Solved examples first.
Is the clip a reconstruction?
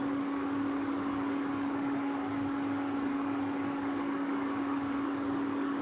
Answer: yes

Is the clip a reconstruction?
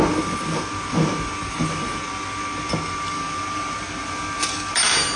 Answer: no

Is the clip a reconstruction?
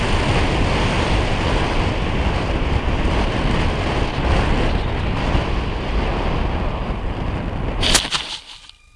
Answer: no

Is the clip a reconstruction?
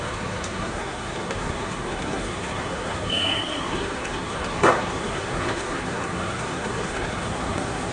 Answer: yes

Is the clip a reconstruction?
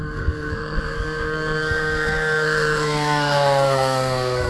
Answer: yes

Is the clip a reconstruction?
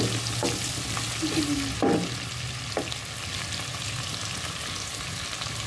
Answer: no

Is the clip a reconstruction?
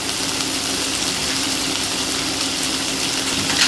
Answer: no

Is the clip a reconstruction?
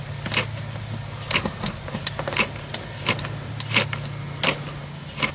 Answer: no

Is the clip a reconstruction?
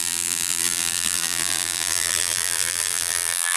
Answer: yes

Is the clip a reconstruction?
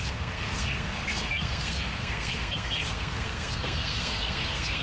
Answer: yes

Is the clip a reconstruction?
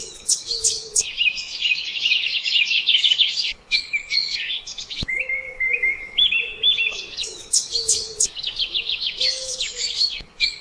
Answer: yes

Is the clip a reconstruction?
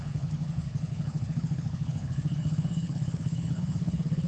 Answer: yes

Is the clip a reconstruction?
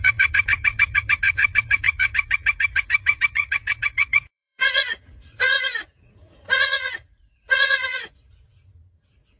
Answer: yes